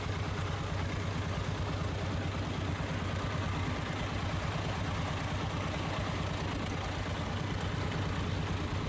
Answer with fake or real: real